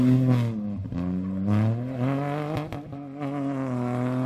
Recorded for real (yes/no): yes